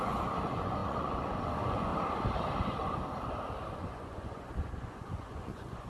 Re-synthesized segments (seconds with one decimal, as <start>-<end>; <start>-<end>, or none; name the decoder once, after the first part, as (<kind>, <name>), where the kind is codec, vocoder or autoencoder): 0.0-1.9 (vocoder, Vocos); 3.7-5.9